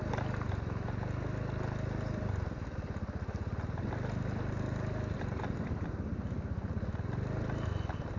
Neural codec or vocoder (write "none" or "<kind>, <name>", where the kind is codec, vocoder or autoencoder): none